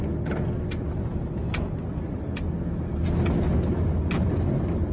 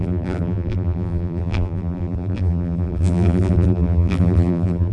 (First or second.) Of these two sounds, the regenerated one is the second